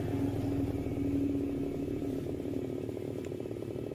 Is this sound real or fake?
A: real